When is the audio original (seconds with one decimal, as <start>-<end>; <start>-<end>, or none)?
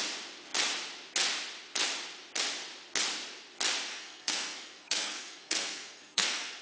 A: 0.0-3.9